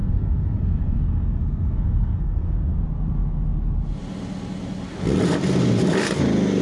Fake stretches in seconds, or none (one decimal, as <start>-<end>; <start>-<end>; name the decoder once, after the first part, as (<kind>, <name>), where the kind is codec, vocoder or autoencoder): 0.0-2.8 (codec, SNAC)